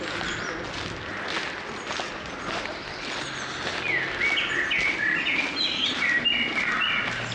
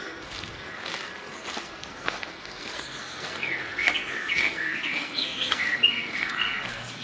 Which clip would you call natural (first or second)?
first